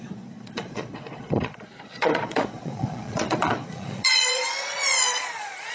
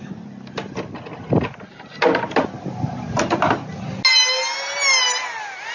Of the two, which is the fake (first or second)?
first